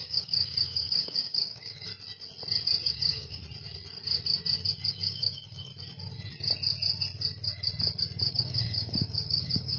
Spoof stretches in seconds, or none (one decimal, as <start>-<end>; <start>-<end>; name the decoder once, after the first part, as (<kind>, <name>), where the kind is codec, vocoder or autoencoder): 0.0-1.9 (codec, DAC); 2.9-3.4; 4.9-5.7; 8.3-9.8